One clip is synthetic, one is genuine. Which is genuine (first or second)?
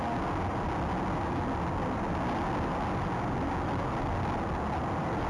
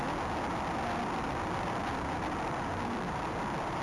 first